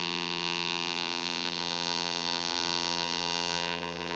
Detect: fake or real fake